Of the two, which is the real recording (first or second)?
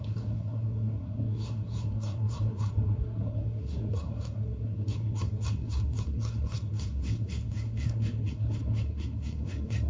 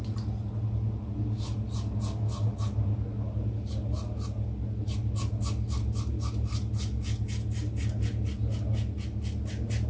second